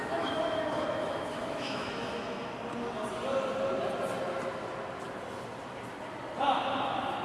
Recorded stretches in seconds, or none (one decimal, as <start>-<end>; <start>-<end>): 2.5-7.2